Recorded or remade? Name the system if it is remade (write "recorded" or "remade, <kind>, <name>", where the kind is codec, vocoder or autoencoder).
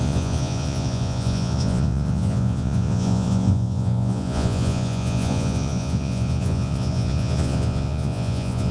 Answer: remade, vocoder, Vocos